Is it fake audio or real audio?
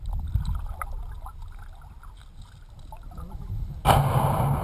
real